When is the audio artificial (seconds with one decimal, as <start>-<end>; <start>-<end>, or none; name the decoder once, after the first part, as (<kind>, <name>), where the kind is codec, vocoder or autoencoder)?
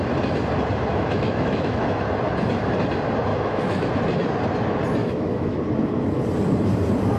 0.9-2.0 (autoencoder, DAC-VAE); 3.3-3.9; 5.0-5.6